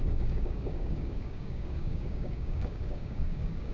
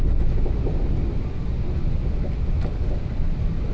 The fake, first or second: first